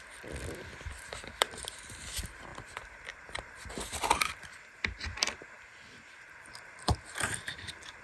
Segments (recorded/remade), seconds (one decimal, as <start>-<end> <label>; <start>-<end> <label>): 0.0-8.0 remade